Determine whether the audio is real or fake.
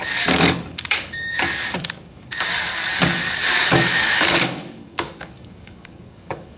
fake